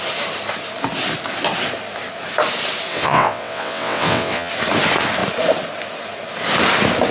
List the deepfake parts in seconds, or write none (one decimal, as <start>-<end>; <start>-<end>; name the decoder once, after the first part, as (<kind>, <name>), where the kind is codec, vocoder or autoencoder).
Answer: 2.9-4.5 (vocoder, WaveNeXt)